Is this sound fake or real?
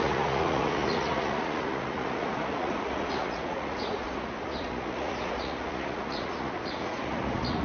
fake